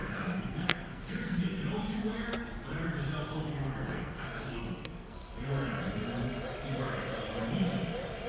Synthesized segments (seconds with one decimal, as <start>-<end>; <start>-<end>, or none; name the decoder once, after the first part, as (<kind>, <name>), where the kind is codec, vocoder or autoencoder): 0.0-1.4 (codec, SNAC); 3.5-5.8